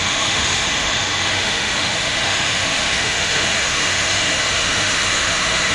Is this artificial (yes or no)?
yes